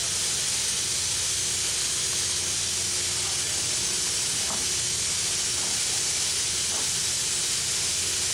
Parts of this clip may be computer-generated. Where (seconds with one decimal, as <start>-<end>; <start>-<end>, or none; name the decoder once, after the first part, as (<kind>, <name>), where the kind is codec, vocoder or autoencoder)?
none